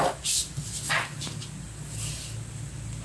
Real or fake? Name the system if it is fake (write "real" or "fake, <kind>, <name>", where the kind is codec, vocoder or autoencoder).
real